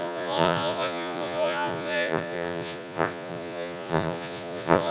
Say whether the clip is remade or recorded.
remade